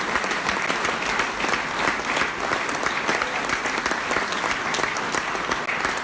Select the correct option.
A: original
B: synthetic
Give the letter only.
A